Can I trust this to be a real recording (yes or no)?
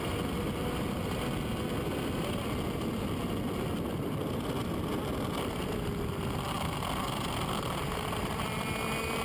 yes